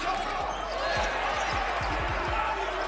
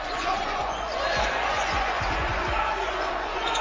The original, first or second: first